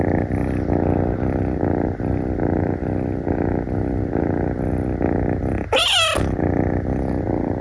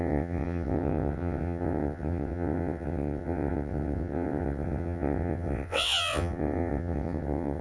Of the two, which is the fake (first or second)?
second